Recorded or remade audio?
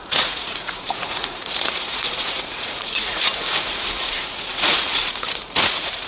remade